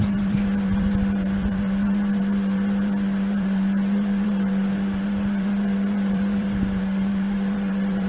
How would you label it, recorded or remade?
remade